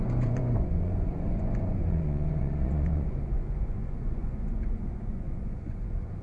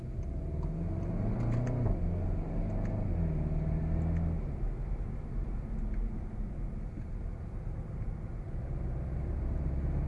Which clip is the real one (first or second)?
second